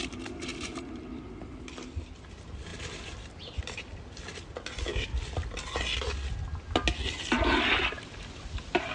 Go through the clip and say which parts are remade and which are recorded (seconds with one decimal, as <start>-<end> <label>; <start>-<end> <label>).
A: 0.0-2.7 recorded; 2.7-3.6 remade; 3.6-8.9 recorded